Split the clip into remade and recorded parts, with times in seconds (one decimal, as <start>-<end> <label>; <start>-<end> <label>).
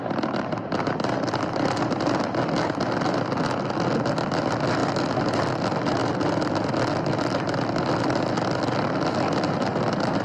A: 0.0-10.2 recorded